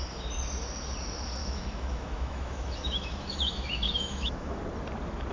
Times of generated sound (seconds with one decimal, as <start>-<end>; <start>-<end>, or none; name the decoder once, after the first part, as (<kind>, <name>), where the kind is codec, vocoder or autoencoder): 1.4-4.6 (autoencoder, DAC-VAE)

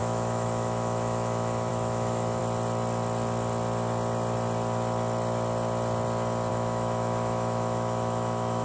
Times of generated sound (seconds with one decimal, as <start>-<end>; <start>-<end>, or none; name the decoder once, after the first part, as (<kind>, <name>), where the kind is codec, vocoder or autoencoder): 0.0-2.4 (autoencoder, DAC-VAE); 6.5-8.6

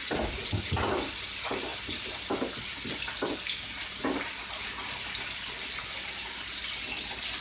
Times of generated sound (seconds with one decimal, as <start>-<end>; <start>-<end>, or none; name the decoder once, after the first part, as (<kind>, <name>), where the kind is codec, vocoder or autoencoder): none

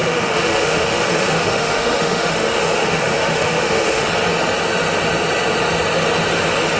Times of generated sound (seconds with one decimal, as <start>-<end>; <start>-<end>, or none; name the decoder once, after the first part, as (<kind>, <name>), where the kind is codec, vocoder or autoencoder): 0.0-4.1 (autoencoder, DAC-VAE)

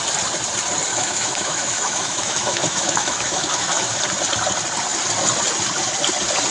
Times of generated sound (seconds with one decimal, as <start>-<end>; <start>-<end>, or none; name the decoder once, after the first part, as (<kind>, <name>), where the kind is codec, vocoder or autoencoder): 0.9-4.0 (autoencoder, DAC-VAE)

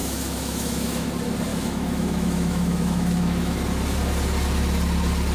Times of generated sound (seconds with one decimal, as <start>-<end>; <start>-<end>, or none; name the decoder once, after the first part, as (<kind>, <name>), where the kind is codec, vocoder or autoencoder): 0.0-1.1 (autoencoder, DAC-VAE); 1.5-3.6

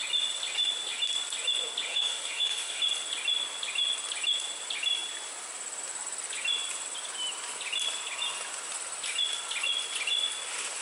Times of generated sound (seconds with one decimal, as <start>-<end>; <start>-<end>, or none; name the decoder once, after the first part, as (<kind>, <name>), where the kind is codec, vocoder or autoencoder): 1.9-2.8 (autoencoder, DAC-VAE)

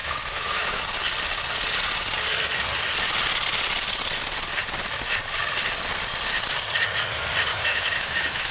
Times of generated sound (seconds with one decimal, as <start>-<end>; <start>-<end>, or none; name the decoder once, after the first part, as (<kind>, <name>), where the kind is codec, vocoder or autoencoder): 0.0-0.8 (autoencoder, DAC-VAE); 7.5-8.5